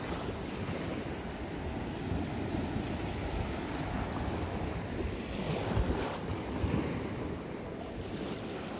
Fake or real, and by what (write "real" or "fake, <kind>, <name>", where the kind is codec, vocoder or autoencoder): real